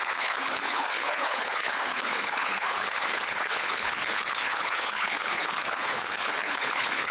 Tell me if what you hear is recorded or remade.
remade